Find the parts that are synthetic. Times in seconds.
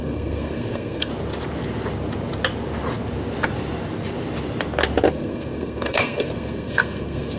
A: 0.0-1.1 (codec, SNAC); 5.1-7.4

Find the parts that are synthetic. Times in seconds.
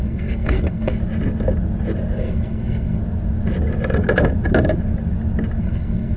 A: 0.0-1.0 (codec, SNAC); 2.2-3.0; 5.6-6.2